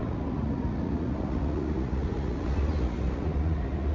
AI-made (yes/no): yes